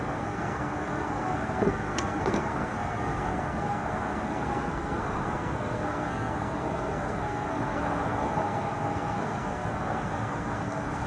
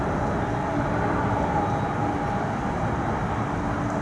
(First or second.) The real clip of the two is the second